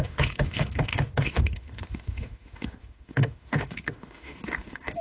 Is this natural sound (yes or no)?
no